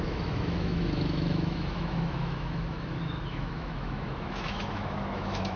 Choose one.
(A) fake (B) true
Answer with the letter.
A